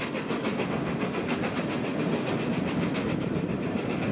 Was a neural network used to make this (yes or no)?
no